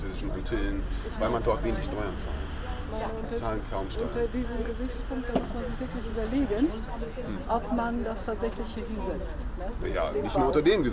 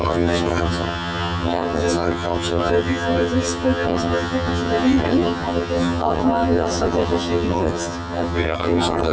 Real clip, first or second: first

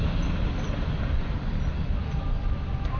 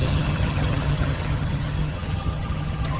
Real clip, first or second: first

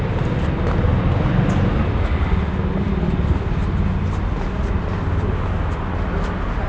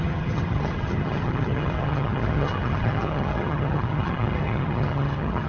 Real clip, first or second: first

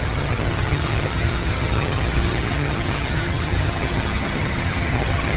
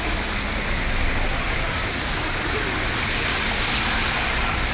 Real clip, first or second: second